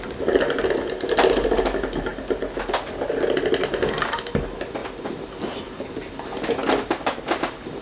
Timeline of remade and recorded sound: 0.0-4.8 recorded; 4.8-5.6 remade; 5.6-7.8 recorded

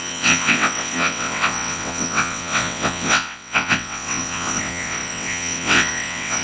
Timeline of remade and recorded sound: 0.0-6.4 remade

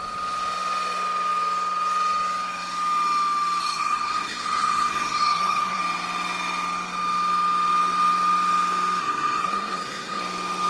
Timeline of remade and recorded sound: 0.0-3.6 recorded; 3.6-5.8 remade; 5.8-9.0 recorded; 9.0-10.2 remade; 10.2-10.7 recorded

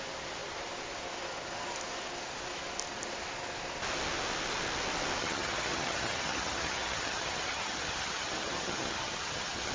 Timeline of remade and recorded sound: 0.0-5.2 recorded; 5.2-9.7 remade

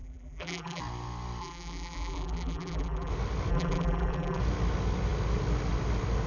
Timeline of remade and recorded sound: 0.0-0.8 remade; 0.8-1.4 recorded; 1.4-3.1 remade; 3.1-3.5 recorded; 3.5-4.4 remade; 4.4-6.3 recorded

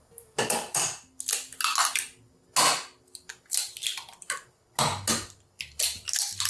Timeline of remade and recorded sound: 0.0-6.5 recorded